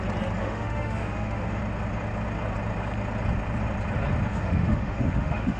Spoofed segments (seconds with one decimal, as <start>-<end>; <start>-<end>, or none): 0.4-1.6; 4.3-5.6